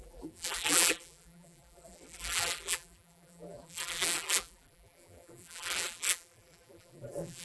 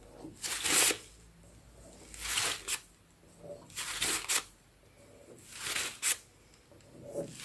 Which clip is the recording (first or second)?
second